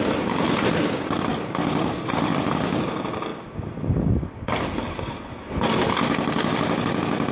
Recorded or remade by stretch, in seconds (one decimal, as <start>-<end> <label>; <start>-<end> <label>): 0.0-1.3 recorded; 1.3-2.8 remade; 2.8-7.3 recorded